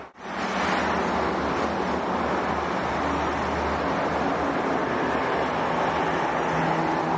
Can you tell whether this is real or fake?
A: real